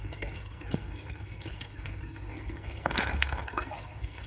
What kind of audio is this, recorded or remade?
remade